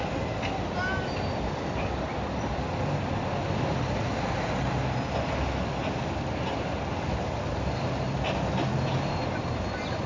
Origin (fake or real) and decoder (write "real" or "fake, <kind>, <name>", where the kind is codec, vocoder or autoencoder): real